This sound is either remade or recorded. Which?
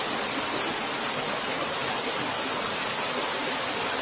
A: recorded